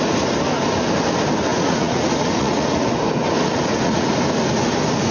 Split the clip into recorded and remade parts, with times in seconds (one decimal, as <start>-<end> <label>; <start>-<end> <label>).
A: 0.0-1.5 recorded; 1.5-2.9 remade; 2.9-3.7 recorded; 3.7-4.2 remade; 4.2-5.1 recorded